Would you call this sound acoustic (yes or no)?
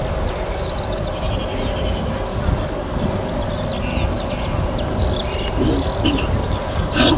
yes